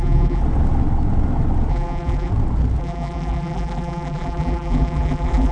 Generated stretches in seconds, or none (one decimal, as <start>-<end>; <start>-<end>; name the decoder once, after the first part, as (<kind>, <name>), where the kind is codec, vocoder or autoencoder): 0.0-0.4 (vocoder, BigVGAN v2); 1.7-2.3; 2.8-5.5